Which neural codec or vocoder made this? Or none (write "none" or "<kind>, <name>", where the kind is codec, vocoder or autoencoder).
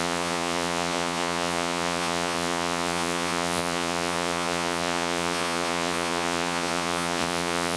vocoder, Vocos